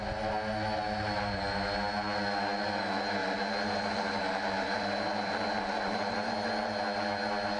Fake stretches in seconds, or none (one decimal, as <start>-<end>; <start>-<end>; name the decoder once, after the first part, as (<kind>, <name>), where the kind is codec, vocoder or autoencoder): 3.2-6.1 (vocoder, BigVGAN v2)

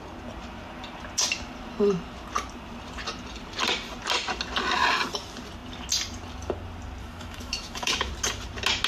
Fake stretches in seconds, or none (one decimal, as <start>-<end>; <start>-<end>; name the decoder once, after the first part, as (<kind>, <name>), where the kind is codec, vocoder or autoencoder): 7.0-8.1 (autoencoder, DAC-VAE)

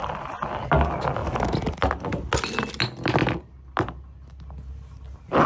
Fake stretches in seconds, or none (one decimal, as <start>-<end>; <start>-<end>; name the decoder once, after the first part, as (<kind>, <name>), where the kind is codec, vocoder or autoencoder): none